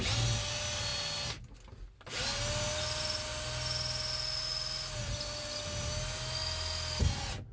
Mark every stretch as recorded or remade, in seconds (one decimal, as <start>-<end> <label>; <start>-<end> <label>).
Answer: 0.0-7.5 recorded